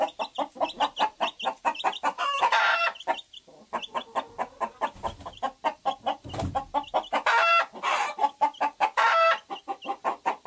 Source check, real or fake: real